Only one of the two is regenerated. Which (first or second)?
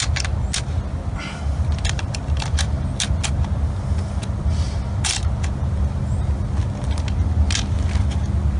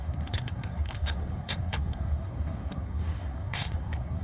second